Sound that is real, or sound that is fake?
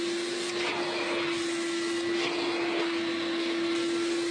real